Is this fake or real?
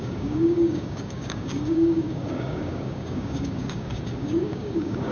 fake